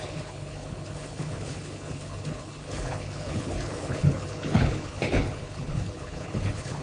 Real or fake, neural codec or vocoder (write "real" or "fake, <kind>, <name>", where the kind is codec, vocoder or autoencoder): fake, codec, HILCodec